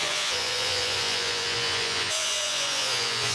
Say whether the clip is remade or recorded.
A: remade